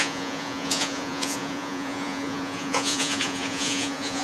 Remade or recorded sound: remade